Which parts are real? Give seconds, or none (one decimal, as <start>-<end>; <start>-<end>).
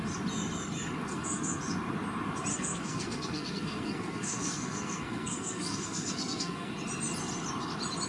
0.0-1.1; 1.6-2.5; 6.7-8.1